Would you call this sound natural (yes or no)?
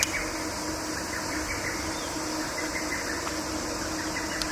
yes